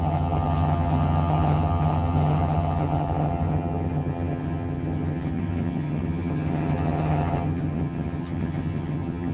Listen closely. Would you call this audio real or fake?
fake